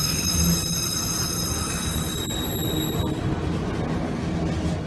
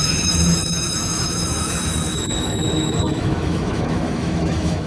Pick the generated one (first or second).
second